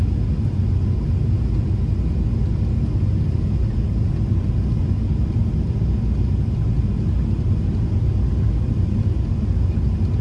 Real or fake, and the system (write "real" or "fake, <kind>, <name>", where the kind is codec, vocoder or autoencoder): real